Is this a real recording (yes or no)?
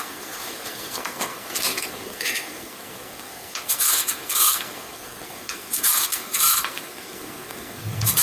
no